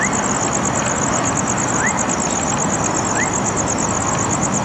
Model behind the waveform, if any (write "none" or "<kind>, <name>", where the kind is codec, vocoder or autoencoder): none